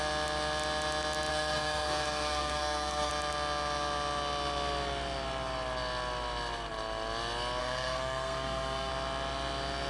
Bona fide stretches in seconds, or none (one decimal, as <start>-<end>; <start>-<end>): 0.0-1.3; 3.1-7.6; 8.9-9.9